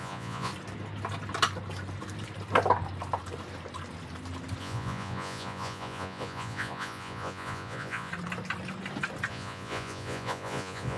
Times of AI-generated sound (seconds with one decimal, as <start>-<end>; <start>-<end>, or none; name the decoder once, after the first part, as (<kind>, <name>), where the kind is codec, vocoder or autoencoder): 0.0-0.5 (vocoder, Vocos); 4.6-8.1; 9.3-11.0